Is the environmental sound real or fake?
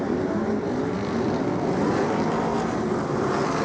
real